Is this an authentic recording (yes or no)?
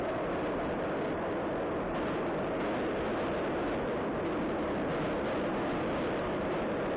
yes